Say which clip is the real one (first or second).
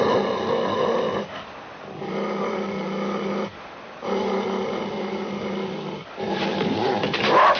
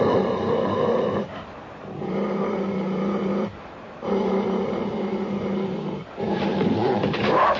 first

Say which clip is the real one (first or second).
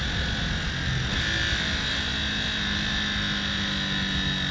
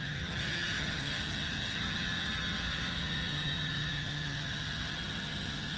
first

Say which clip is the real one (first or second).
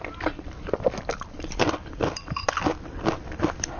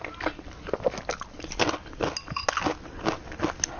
second